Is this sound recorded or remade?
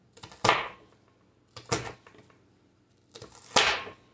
recorded